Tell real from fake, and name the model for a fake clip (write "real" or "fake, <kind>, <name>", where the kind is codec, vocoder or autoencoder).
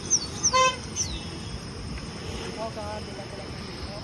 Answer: real